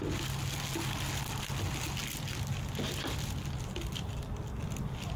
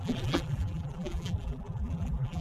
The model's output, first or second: second